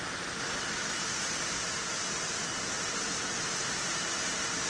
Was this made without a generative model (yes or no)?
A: yes